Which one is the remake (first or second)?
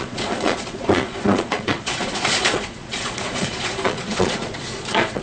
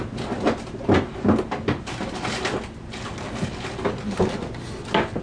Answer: first